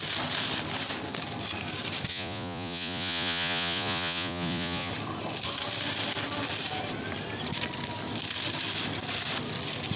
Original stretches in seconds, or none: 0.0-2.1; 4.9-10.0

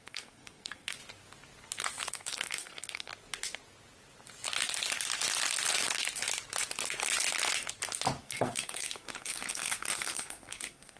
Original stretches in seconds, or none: 1.0-2.1; 3.1-8.2

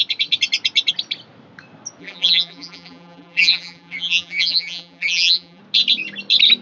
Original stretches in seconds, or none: 0.0-2.0; 5.6-6.6

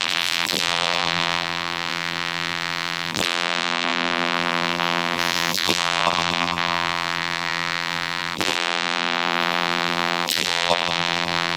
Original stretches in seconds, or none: none

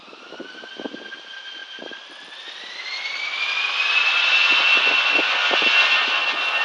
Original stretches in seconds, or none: 0.0-1.6; 2.6-6.6

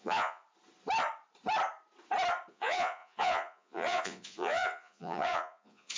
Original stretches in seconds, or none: 0.4-2.5